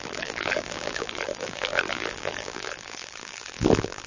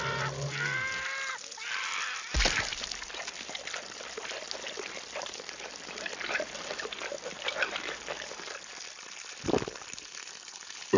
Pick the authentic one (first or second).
second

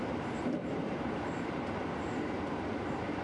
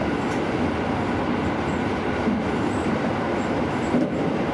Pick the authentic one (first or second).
second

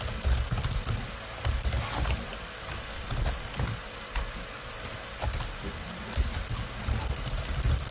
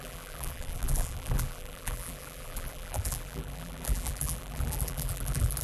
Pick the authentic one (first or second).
first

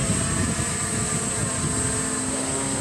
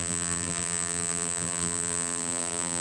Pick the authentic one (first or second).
first